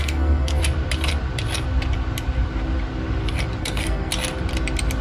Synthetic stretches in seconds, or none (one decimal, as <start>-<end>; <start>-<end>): 0.0-0.6; 3.6-4.1